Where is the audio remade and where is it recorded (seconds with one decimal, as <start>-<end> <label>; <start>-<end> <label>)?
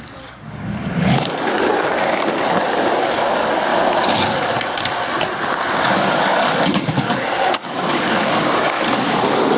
0.0-3.7 remade; 3.7-5.7 recorded; 5.7-9.6 remade